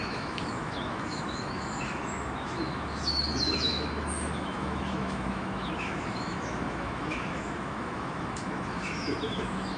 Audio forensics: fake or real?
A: fake